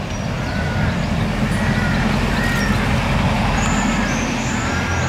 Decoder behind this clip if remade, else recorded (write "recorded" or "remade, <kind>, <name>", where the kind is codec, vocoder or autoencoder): recorded